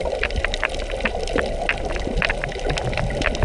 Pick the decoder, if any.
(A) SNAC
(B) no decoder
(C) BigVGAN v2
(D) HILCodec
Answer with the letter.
B